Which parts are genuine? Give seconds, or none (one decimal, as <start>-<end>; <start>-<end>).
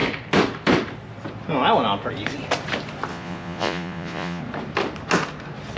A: 0.0-3.1; 4.4-5.8